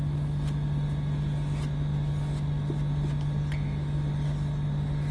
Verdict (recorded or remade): recorded